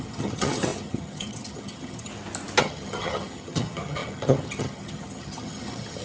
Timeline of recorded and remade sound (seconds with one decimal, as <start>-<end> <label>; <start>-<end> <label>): 0.0-2.1 remade; 2.1-2.6 recorded; 2.6-6.0 remade